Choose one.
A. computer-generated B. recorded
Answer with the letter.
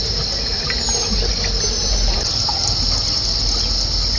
B